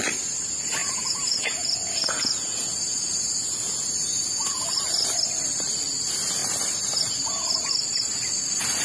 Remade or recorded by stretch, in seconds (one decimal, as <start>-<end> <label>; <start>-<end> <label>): 0.0-0.8 recorded; 0.8-4.7 remade; 4.7-8.8 recorded